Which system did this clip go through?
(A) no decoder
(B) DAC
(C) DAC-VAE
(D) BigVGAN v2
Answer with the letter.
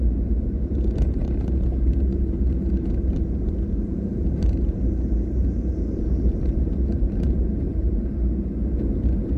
D